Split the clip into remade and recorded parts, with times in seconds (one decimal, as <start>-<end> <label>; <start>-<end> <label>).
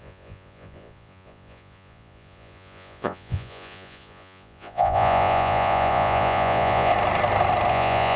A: 0.0-6.9 remade; 6.9-7.7 recorded; 7.7-8.2 remade